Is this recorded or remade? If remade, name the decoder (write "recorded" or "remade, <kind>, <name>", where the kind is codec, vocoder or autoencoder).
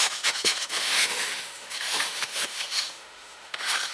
remade, autoencoder, DAC-VAE